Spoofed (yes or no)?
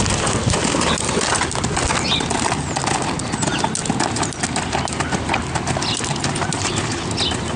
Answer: no